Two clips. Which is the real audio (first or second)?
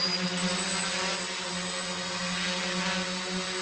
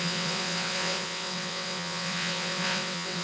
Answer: first